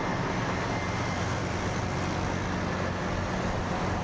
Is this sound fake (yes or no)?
no